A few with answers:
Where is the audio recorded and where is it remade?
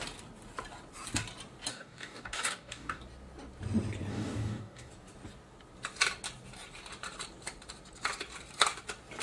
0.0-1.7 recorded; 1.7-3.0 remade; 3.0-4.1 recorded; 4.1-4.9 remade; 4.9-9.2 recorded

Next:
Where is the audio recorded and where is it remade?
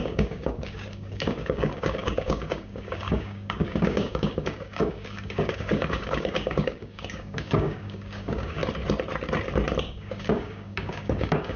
0.0-8.6 remade; 8.6-9.8 recorded; 9.8-11.6 remade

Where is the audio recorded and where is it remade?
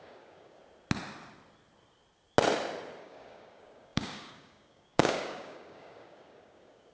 0.0-0.6 remade; 0.6-3.0 recorded; 3.0-6.9 remade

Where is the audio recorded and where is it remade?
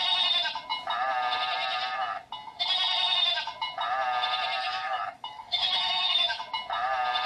0.0-4.6 recorded; 4.6-6.4 remade; 6.4-7.3 recorded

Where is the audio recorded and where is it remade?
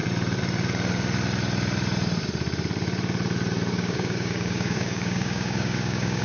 0.0-3.7 recorded; 3.7-6.2 remade